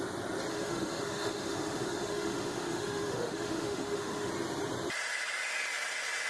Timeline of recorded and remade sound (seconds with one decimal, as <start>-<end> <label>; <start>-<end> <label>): 0.0-0.5 recorded; 0.5-4.3 remade; 4.3-6.3 recorded